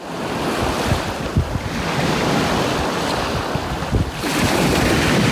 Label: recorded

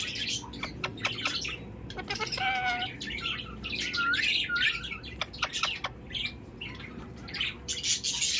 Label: recorded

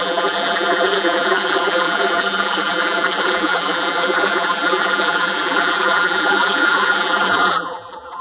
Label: remade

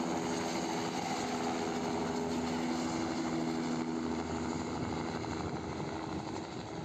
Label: recorded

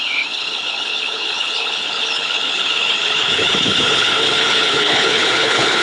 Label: remade